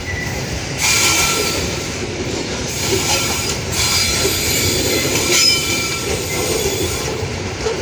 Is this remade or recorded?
remade